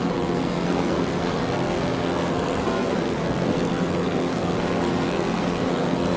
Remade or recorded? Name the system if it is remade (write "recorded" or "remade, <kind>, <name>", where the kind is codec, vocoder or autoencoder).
remade, codec, SNAC